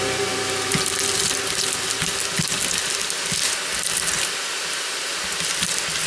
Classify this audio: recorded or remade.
recorded